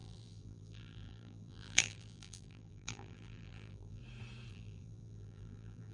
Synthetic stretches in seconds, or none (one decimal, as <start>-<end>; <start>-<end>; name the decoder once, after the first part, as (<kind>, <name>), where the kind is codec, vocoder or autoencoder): 0.0-4.0 (vocoder, BigVGAN v2); 4.5-5.9